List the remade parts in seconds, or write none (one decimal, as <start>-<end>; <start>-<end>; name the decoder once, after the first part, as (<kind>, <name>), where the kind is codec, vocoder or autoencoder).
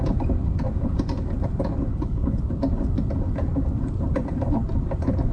1.9-2.4 (codec, HILCodec)